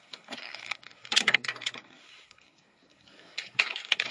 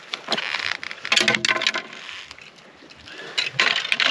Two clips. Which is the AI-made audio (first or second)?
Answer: first